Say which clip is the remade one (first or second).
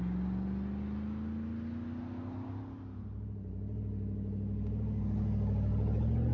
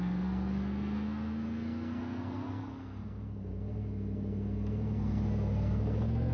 second